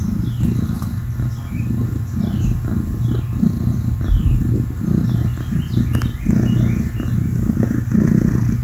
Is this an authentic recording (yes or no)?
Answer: yes